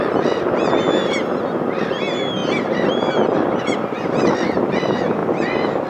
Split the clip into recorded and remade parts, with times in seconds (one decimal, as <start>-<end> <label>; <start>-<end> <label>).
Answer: 0.0-5.9 recorded